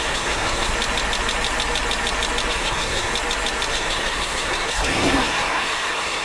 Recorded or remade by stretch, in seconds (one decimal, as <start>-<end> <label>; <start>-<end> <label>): 0.0-0.7 remade; 0.7-2.5 recorded; 2.5-3.1 remade; 3.1-3.7 recorded; 3.7-6.2 remade